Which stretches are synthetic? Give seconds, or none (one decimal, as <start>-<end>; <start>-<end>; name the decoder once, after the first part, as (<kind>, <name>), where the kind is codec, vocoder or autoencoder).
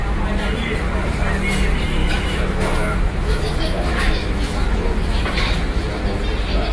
2.0-5.9 (autoencoder, DAC-VAE)